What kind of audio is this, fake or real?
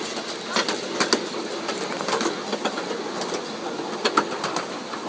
real